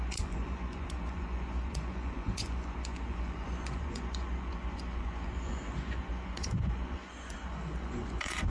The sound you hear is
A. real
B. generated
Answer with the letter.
B